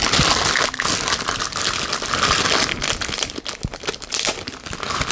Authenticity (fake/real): real